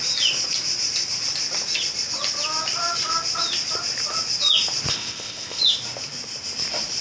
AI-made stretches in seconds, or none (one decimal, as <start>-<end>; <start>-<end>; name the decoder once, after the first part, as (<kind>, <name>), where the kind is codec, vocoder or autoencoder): 4.9-5.6 (codec, ZipCodec)